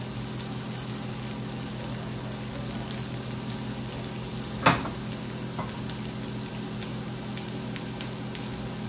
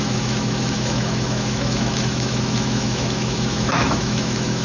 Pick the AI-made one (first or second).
second